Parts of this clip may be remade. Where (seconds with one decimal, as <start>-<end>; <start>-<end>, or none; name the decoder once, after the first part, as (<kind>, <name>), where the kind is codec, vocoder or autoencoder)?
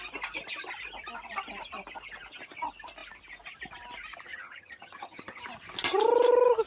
4.3-5.4 (vocoder, HiFi-GAN)